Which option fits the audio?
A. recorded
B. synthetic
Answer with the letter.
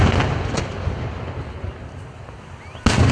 A